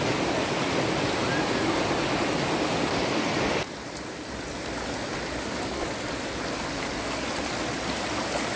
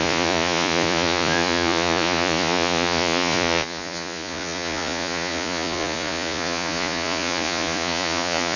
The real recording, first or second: first